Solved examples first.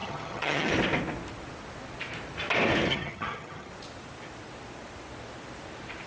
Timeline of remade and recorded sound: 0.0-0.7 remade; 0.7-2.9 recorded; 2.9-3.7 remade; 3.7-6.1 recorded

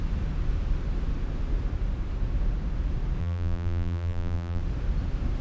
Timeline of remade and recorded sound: 0.0-3.2 recorded; 3.2-4.6 remade; 4.6-5.4 recorded